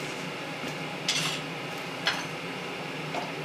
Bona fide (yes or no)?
yes